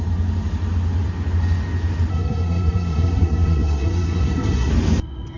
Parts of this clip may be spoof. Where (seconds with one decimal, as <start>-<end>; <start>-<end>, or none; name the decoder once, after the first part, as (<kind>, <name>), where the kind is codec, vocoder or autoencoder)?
2.1-4.7 (codec, SNAC)